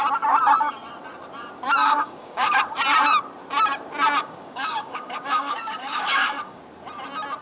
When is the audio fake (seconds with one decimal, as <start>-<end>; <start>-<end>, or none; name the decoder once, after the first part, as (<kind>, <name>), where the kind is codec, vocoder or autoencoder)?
1.8-2.5 (codec, DAC); 4.2-6.6